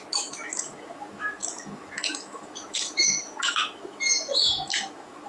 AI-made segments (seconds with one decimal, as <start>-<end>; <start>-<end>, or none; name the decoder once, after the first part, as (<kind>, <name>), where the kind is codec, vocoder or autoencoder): 0.0-5.3 (autoencoder, DAC-VAE)